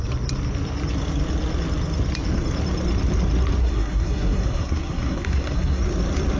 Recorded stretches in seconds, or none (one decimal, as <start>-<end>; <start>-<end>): 0.0-3.6; 5.8-6.4